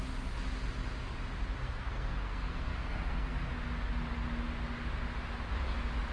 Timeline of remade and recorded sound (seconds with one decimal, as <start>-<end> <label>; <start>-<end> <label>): 0.0-1.6 recorded; 1.6-3.5 remade; 3.5-6.1 recorded